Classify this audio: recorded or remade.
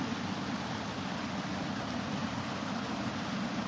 recorded